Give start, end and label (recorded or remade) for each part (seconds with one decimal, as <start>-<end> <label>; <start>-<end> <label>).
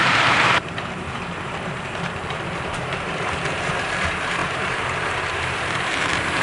0.0-6.4 remade